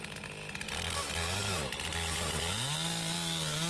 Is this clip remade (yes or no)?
no